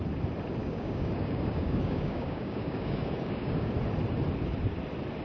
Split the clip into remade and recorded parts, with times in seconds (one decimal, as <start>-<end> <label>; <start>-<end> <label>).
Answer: 0.0-0.6 recorded; 0.6-3.7 remade; 3.7-5.2 recorded